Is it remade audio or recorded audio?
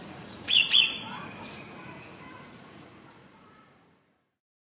remade